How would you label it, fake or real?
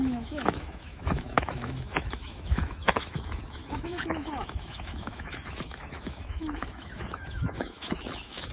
fake